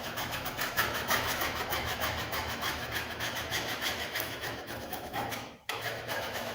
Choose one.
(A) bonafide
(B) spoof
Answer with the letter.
B